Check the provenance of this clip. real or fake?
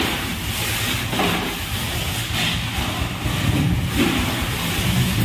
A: real